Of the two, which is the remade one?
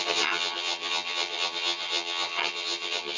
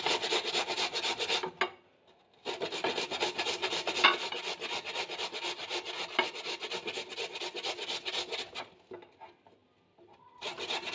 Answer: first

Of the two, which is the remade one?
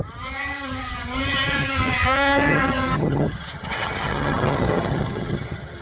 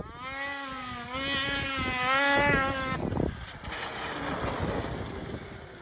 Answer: first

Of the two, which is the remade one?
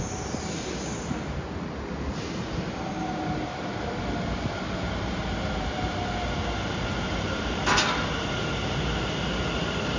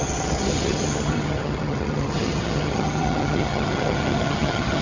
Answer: second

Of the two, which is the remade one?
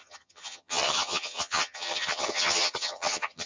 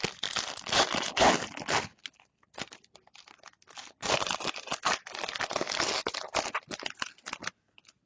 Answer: first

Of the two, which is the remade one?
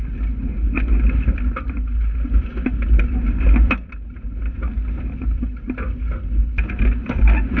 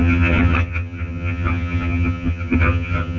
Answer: second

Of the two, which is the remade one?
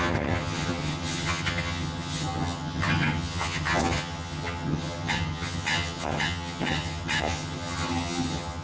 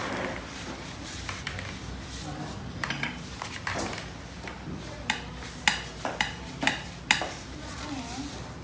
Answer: first